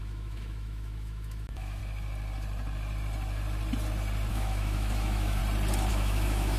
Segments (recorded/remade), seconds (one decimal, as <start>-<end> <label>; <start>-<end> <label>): 0.0-1.8 remade; 1.8-4.3 recorded; 4.3-5.4 remade; 5.4-5.9 recorded; 5.9-6.6 remade